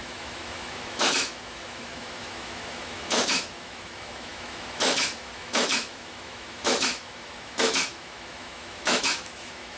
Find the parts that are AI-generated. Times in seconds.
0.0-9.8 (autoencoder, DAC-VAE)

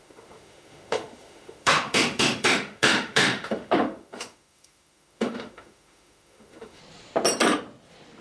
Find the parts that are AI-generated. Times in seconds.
0.0-6.8 (autoencoder, DAC-VAE)

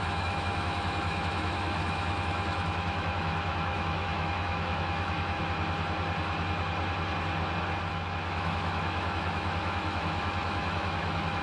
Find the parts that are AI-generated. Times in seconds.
0.0-5.4 (autoencoder, DAC-VAE); 7.9-11.4

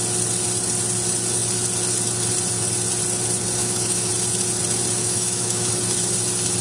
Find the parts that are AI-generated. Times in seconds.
3.6-4.1 (autoencoder, DAC-VAE); 5.0-5.7

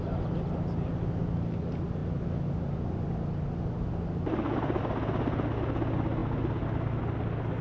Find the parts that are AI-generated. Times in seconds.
none

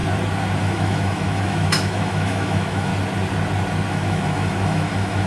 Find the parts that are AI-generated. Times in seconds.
0.6-2.9 (autoencoder, DAC-VAE); 3.9-5.3

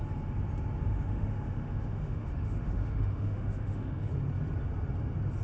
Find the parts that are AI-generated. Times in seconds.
0.9-4.1 (autoencoder, DAC-VAE)